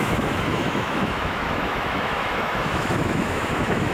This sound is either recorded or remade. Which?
remade